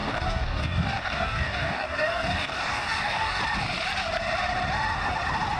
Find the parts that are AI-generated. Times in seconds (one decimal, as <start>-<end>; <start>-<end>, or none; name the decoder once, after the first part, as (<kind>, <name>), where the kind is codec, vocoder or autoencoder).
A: 0.0-3.4 (codec, DAC)